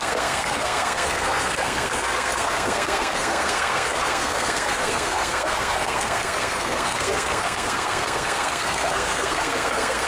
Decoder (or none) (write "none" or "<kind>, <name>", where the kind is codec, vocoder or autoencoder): codec, SNAC